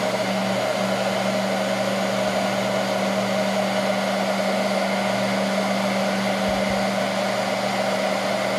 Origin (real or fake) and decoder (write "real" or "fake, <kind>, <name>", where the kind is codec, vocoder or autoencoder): real